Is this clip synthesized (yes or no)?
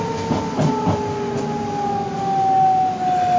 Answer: no